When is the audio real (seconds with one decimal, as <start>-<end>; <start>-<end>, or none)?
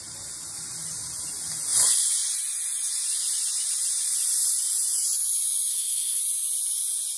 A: 0.0-5.7; 6.2-7.2